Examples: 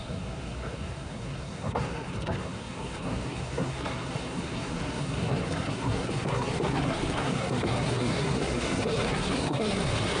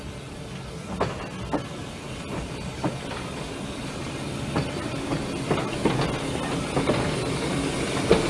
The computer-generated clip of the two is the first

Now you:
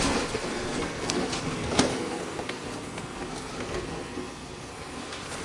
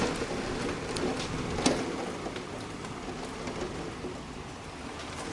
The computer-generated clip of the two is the first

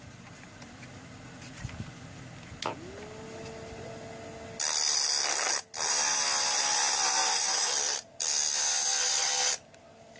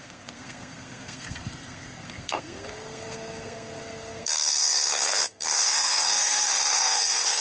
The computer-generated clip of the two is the second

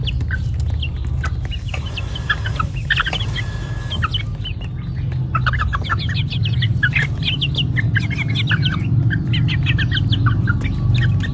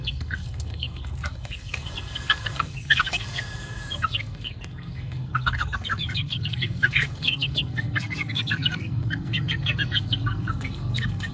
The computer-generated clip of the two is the second